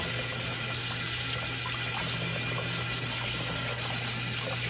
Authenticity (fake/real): real